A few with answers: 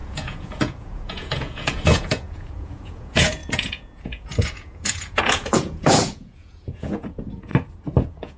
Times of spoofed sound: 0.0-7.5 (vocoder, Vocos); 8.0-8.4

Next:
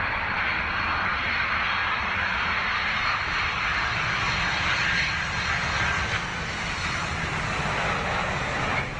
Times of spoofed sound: none

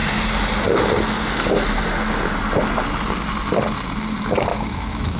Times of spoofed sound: 4.5-5.2 (autoencoder, DAC-VAE)

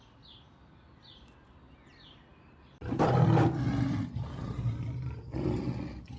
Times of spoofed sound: none